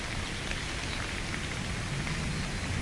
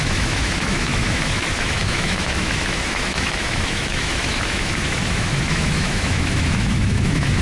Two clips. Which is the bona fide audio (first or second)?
first